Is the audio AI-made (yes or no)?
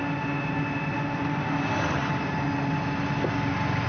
no